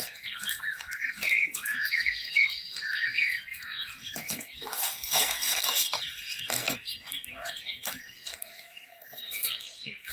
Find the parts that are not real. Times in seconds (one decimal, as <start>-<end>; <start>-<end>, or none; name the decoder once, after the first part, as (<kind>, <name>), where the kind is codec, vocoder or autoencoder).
0.0-10.1 (codec, SNAC)

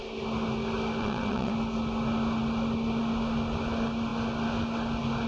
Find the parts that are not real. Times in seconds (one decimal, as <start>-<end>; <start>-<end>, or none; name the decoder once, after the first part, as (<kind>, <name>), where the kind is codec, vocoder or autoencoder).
1.0-1.5 (vocoder, WaveNeXt)